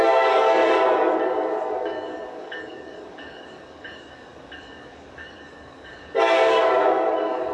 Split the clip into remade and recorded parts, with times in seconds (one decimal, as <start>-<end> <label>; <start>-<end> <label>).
0.0-7.5 remade